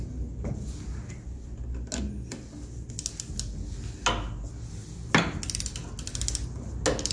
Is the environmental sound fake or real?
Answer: real